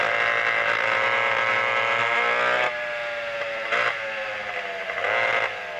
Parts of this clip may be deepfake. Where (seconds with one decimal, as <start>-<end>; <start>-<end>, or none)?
none